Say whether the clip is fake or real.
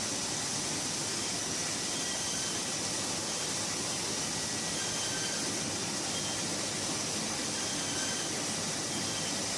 real